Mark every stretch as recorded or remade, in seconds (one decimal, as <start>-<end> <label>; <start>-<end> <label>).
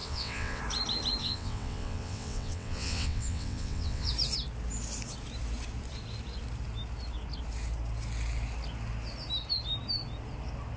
0.0-0.6 remade; 0.6-1.2 recorded; 1.2-4.1 remade; 4.1-10.8 recorded